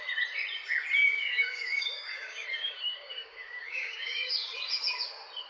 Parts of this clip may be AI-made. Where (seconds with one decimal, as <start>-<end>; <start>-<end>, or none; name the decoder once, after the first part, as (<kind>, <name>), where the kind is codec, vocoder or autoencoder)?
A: 1.0-4.3 (codec, DAC)